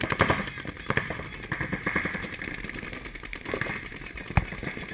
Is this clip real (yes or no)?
yes